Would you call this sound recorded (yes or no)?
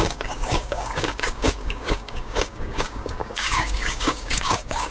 no